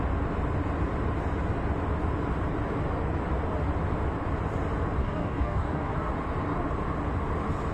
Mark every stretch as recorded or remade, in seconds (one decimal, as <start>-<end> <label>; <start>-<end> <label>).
0.0-5.0 recorded; 5.0-5.9 remade; 5.9-7.7 recorded